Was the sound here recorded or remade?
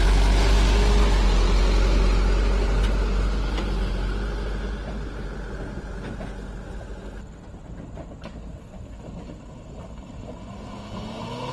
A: recorded